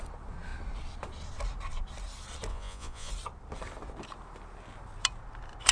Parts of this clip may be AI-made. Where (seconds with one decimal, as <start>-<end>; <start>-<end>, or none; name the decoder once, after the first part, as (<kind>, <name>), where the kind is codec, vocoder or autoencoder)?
2.5-3.1 (vocoder, Vocos)